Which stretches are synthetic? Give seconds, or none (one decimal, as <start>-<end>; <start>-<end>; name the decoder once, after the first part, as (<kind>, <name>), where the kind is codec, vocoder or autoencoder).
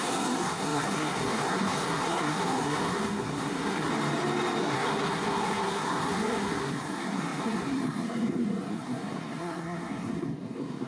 0.0-3.9 (codec, SNAC); 4.6-10.9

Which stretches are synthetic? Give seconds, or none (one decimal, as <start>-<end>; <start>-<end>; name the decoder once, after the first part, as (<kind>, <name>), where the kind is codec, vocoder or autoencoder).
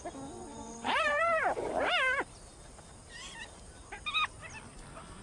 0.5-1.2 (vocoder, BigVGAN v2)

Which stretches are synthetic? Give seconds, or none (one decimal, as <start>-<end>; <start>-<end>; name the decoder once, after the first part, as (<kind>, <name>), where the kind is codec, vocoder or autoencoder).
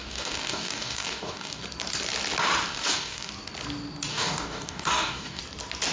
0.0-1.6 (codec, DAC); 2.7-3.3; 4.1-5.4